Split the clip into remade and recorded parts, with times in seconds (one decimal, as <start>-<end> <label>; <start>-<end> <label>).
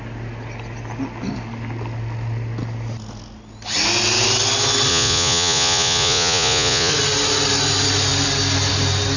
0.0-4.9 recorded; 4.9-6.9 remade; 6.9-9.2 recorded